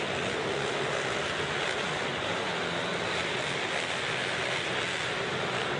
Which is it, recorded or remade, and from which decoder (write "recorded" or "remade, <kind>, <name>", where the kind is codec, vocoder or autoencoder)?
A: recorded